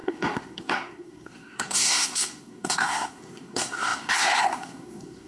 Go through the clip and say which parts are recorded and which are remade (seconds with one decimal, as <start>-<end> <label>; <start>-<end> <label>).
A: 0.0-5.3 remade